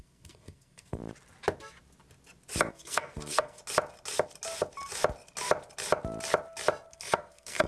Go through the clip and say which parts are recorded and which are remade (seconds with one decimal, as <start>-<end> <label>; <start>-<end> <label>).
0.0-1.0 remade; 1.0-2.7 recorded; 2.7-3.6 remade; 3.6-6.9 recorded; 6.9-7.7 remade